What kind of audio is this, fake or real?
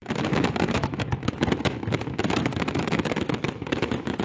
fake